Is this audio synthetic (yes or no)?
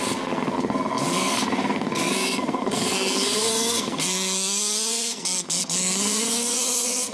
yes